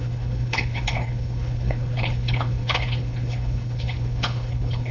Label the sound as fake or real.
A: fake